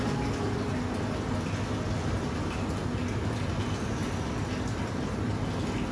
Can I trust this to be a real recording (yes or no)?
yes